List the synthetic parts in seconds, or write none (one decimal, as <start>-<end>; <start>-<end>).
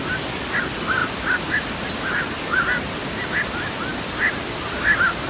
none